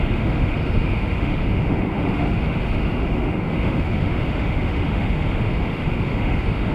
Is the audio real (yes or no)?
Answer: no